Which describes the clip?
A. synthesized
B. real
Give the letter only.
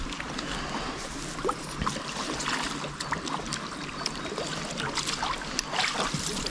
B